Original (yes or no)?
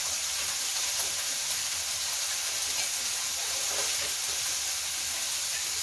yes